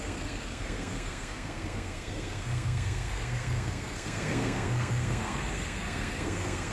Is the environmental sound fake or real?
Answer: fake